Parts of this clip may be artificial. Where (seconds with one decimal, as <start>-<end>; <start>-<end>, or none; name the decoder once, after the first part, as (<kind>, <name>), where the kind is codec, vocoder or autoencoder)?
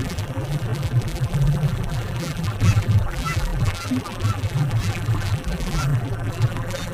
0.0-6.9 (vocoder, BigVGAN v2)